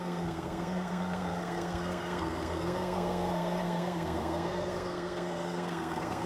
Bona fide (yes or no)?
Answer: no